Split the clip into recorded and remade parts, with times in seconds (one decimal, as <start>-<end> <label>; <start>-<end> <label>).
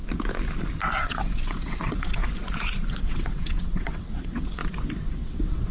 0.0-0.9 recorded; 0.9-2.2 remade; 2.2-2.9 recorded; 2.9-4.6 remade; 4.6-5.1 recorded; 5.1-5.7 remade